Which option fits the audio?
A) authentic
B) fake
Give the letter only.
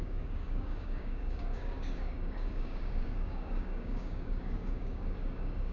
B